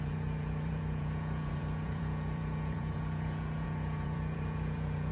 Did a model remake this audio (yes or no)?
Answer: yes